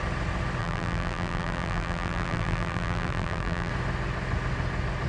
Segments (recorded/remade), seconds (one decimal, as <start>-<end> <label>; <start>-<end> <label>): 0.0-0.6 recorded; 0.6-3.7 remade; 3.7-5.1 recorded